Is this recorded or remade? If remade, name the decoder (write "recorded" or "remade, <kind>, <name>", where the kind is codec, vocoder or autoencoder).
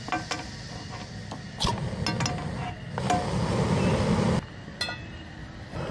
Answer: recorded